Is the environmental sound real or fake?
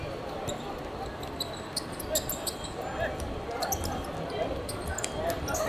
real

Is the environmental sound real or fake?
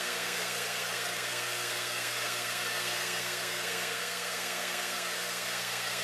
fake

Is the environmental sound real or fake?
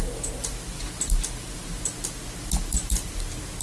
real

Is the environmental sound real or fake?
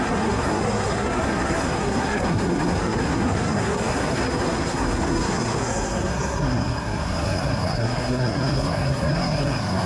fake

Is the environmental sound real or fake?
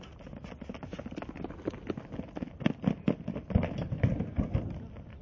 real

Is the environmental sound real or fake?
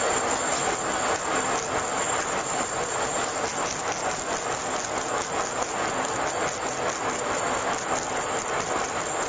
real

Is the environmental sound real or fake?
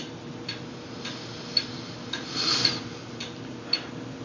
real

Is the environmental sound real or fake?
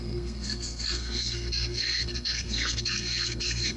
fake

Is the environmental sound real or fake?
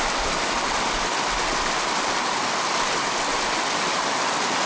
real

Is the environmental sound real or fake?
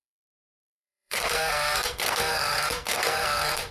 fake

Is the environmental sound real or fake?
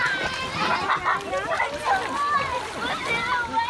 real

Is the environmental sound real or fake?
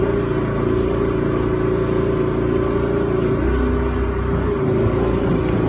real